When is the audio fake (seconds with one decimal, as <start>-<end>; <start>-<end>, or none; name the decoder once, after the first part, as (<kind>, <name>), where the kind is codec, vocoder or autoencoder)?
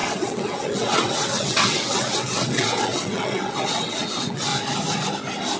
0.0-4.5 (vocoder, WaveNeXt)